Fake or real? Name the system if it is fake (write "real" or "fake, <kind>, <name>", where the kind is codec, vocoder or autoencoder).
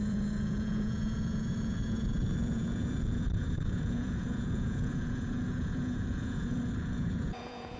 fake, vocoder, Vocos